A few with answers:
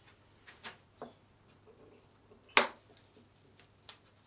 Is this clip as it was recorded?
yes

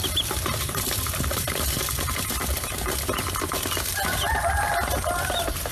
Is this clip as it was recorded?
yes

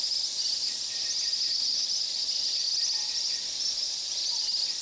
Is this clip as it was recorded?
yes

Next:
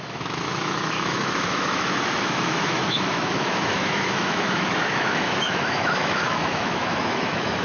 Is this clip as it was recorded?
no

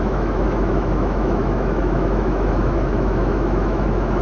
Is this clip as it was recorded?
no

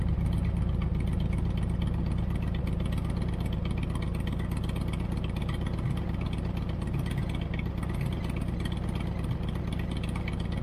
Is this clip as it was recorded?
yes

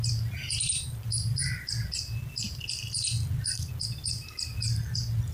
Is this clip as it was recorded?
yes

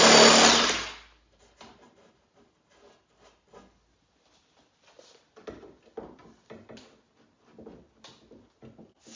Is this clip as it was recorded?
yes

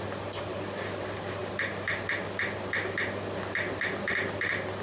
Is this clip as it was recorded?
yes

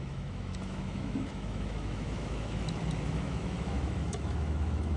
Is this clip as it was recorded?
no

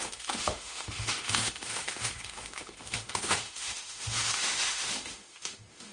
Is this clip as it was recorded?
no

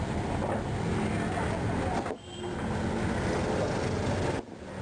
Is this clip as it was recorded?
yes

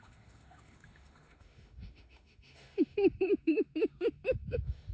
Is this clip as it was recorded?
no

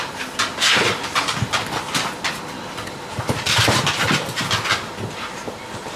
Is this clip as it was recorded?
yes